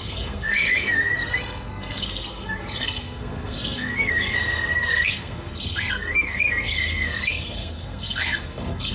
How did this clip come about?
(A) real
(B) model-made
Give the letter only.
B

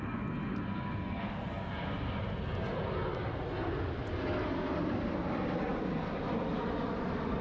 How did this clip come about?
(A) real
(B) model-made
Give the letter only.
A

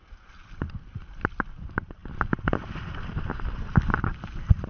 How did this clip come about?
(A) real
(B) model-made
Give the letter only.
A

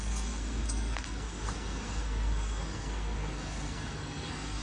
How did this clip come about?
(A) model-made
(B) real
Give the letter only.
A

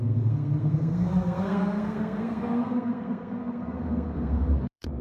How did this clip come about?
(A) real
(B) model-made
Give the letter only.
B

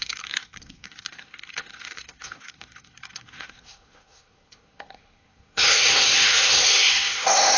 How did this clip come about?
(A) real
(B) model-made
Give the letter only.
B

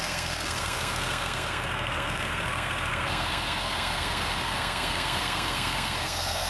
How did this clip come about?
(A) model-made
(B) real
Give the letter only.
A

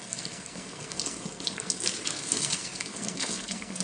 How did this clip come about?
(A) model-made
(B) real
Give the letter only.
A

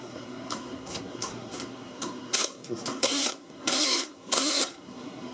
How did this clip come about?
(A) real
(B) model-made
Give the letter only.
B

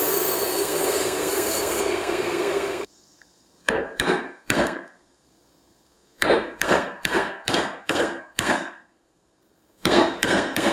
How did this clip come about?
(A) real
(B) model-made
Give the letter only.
B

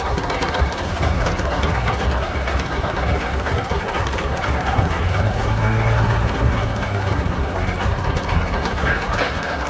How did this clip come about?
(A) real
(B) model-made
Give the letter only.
B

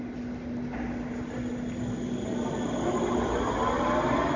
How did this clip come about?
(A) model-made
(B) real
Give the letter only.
B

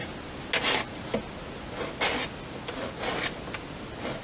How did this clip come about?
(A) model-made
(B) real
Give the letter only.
B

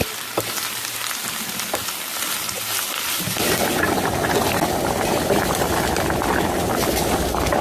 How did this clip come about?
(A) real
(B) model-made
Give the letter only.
A